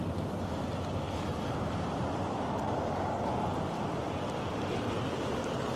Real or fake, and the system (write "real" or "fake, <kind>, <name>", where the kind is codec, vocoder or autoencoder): real